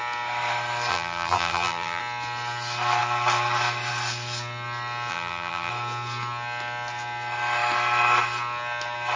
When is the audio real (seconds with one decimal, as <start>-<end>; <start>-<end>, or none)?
0.0-0.9; 2.0-5.1; 5.7-9.2